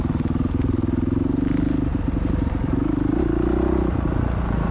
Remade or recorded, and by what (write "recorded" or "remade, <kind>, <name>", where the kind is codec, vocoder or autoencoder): recorded